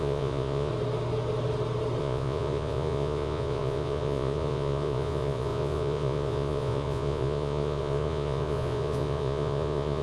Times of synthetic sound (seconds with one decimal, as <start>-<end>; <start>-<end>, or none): 0.0-0.7; 2.0-10.0